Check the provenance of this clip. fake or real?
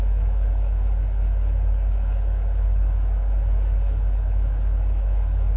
fake